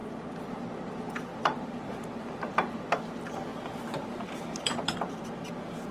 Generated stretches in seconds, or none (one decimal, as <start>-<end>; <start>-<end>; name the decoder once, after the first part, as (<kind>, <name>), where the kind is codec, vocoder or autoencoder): 0.0-0.6 (vocoder, BigVGAN v2); 1.3-2.5; 3.5-5.5